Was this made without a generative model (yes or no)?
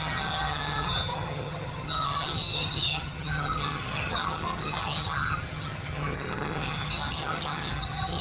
no